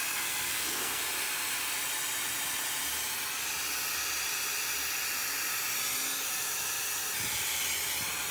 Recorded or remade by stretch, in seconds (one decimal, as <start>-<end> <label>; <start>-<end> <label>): 0.0-1.0 remade; 1.0-8.3 recorded